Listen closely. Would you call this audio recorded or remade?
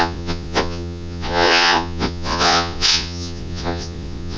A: remade